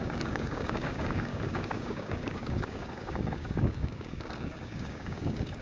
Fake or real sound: fake